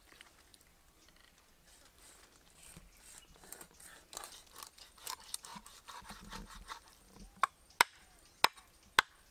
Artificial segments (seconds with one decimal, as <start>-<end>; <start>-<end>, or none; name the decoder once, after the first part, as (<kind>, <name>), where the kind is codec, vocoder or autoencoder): none